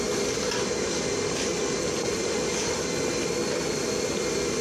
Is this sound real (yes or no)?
yes